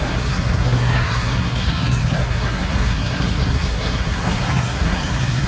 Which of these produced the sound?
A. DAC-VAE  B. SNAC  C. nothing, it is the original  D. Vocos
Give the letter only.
B